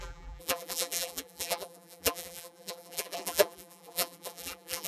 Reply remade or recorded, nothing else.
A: remade